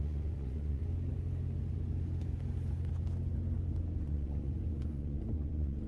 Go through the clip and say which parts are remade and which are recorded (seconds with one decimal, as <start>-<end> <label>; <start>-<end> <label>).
0.0-0.8 remade; 0.8-4.0 recorded; 4.0-5.9 remade